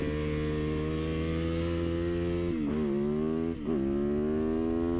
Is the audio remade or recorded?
recorded